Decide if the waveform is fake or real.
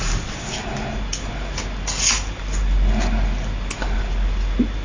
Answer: real